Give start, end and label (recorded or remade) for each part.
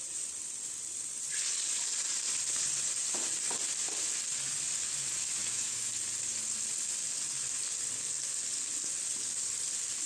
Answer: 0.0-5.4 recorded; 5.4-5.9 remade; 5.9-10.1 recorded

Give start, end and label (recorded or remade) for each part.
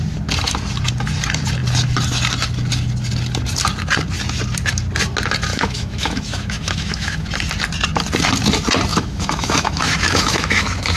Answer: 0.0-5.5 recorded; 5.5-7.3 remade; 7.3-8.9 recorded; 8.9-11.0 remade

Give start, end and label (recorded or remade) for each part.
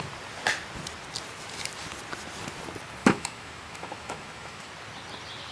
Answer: 0.0-3.0 recorded; 3.0-4.7 remade; 4.7-5.5 recorded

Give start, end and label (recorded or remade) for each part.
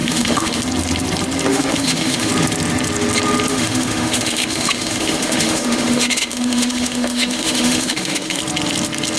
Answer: 0.0-0.6 remade; 0.6-1.5 recorded; 1.5-2.3 remade; 2.3-3.5 recorded; 3.5-8.4 remade; 8.4-9.2 recorded